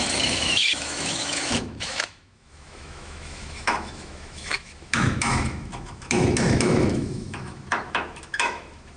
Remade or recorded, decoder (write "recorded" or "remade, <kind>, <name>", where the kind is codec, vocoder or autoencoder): remade, autoencoder, DAC-VAE